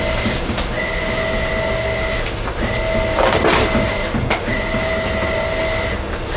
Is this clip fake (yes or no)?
no